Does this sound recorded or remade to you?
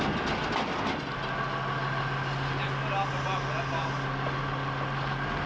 recorded